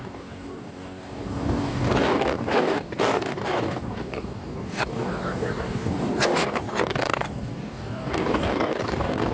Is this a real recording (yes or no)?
no